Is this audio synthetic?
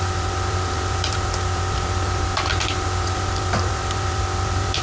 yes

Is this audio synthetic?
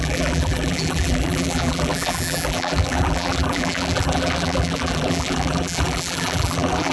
yes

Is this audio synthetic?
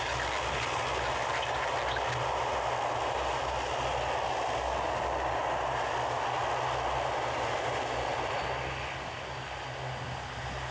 no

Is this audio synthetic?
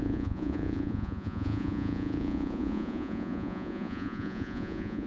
yes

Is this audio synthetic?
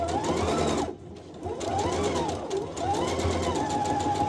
no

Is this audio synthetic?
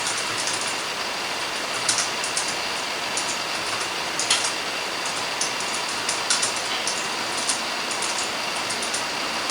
no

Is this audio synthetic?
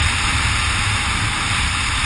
no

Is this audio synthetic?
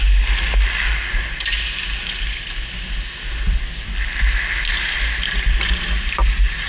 no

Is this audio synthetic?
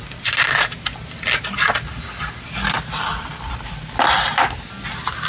no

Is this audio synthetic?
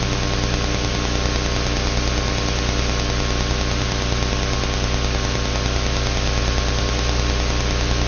no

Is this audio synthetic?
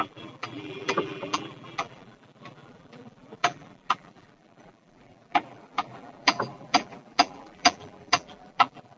yes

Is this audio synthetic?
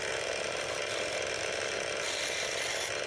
no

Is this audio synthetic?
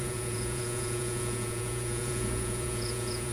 yes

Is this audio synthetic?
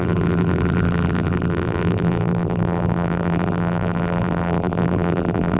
yes